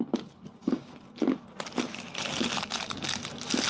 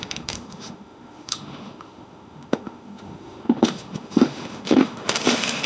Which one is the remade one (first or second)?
second